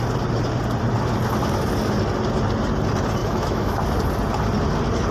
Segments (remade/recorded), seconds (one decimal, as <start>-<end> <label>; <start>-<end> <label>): 0.0-3.2 recorded; 3.2-3.8 remade; 3.8-5.1 recorded